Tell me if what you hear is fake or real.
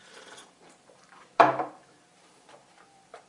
fake